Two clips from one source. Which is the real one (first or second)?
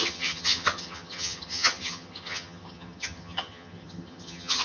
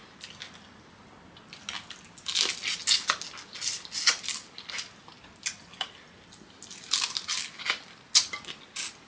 second